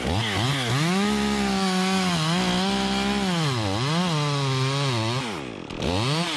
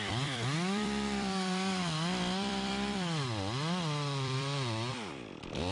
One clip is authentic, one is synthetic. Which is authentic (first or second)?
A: first